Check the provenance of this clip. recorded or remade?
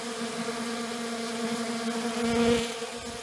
recorded